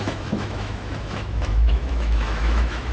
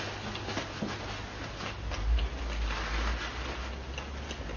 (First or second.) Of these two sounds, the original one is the second